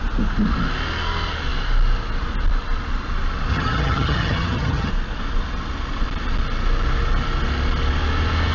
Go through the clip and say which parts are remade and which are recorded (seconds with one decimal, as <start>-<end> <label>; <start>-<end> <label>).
0.0-3.5 recorded; 3.5-4.9 remade; 4.9-8.5 recorded